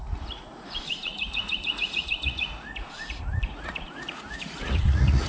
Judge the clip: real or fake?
fake